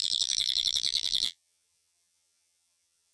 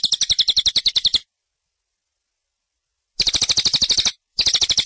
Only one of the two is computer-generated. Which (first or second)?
first